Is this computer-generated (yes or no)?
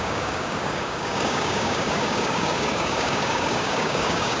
yes